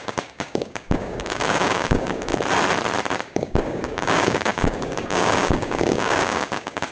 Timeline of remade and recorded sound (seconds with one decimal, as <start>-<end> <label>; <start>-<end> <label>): 0.0-2.3 remade; 2.3-3.2 recorded; 3.2-6.9 remade